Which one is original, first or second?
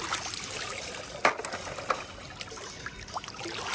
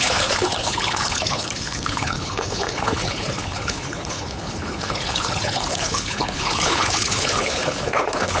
first